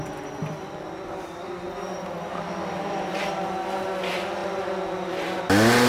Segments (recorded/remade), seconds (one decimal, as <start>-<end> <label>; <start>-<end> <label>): 0.0-5.9 recorded